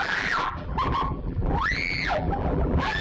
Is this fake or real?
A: fake